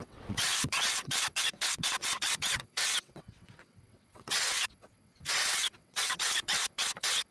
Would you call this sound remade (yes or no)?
yes